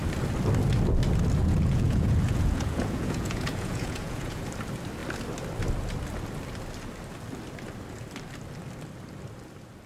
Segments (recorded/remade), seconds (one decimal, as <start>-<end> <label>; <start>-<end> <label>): 0.0-1.4 recorded; 1.4-4.4 remade; 4.4-9.9 recorded